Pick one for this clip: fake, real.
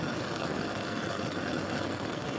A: fake